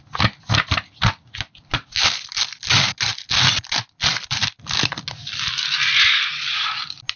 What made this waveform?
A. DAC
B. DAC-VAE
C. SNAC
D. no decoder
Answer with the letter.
D